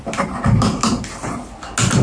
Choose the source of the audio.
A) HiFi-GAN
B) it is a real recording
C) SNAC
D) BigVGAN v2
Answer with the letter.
B